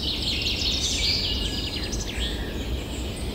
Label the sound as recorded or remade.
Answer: recorded